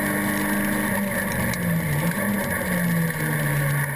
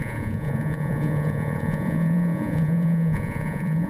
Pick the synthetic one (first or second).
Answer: second